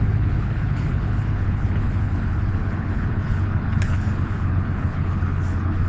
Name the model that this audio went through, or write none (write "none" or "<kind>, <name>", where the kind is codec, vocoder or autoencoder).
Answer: codec, HILCodec